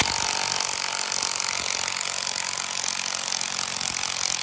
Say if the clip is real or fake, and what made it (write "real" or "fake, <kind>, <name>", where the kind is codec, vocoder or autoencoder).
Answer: real